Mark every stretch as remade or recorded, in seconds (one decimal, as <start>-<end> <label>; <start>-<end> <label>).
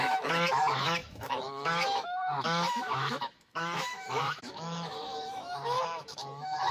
0.0-6.7 remade